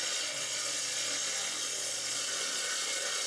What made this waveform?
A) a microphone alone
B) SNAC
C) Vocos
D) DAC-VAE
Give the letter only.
C